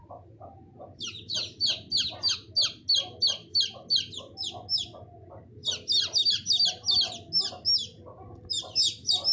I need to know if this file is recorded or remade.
recorded